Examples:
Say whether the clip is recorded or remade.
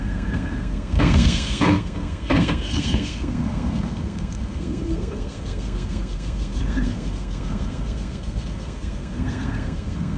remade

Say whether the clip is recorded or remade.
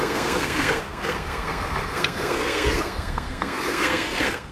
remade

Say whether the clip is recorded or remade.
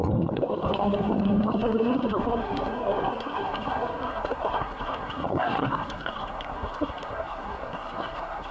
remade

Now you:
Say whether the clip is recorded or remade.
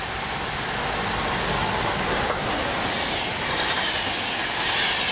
recorded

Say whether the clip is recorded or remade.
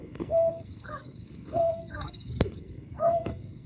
remade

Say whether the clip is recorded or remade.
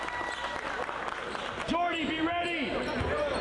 recorded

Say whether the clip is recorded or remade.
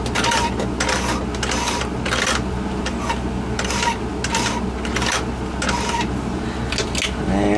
recorded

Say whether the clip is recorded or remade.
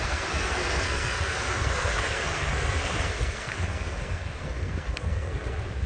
remade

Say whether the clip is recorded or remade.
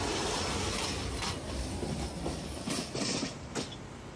recorded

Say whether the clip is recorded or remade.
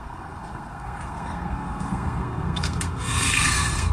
remade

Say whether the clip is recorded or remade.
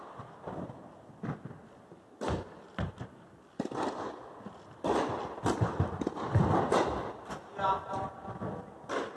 recorded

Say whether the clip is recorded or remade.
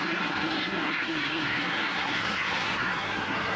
remade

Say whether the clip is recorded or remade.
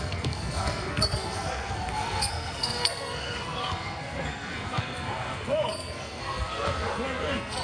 remade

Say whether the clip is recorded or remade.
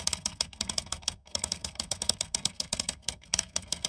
remade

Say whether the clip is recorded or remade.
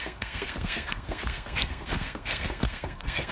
remade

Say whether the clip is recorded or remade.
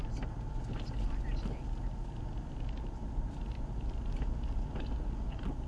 recorded